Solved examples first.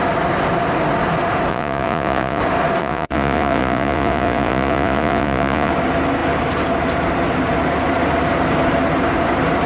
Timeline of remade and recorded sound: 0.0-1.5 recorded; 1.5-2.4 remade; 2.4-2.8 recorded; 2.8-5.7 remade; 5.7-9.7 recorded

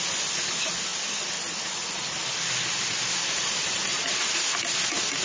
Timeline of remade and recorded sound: 0.0-5.2 recorded

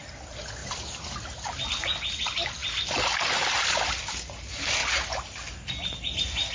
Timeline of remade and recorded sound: 0.0-6.5 recorded

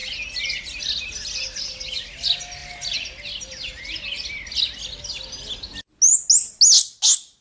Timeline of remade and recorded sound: 0.0-7.4 recorded

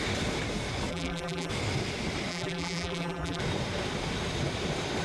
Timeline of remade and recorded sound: 0.0-0.9 recorded; 0.9-1.5 remade; 1.5-2.3 recorded; 2.3-3.4 remade; 3.4-5.0 recorded

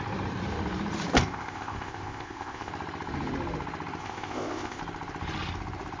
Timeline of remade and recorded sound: 0.0-1.2 recorded; 1.2-2.7 remade; 2.7-4.0 recorded; 4.0-4.8 remade; 4.8-6.0 recorded